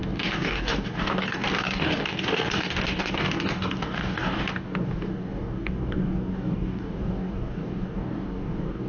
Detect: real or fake fake